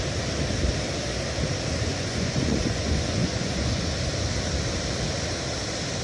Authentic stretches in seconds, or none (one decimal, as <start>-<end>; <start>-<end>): 0.0-1.9; 3.8-6.0